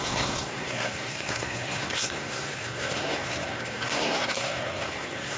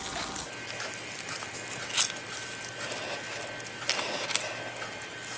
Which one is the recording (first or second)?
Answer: second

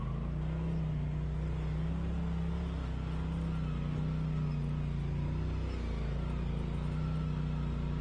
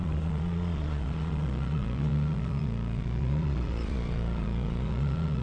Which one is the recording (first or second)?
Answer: first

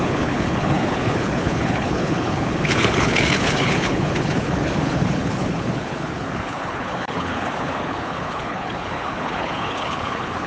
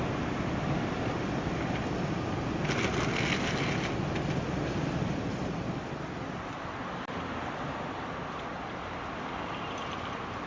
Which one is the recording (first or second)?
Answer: second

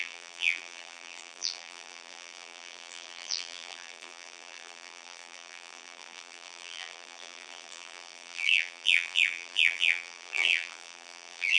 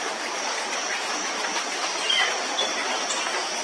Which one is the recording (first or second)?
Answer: second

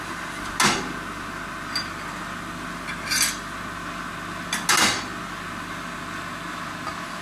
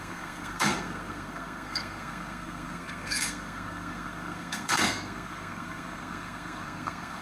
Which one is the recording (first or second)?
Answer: first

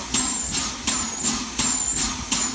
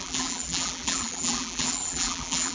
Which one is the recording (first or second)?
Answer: first